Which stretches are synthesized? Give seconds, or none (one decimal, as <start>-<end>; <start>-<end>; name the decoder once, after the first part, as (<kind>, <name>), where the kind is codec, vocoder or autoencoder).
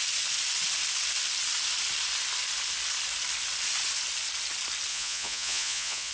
4.9-6.1 (vocoder, Vocos)